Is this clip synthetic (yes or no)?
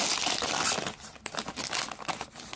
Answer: no